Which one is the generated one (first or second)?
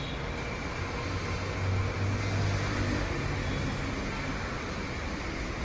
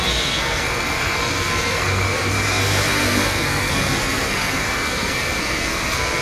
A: second